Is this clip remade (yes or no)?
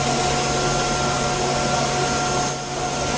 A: no